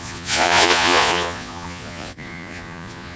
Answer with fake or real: fake